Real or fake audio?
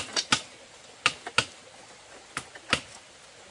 real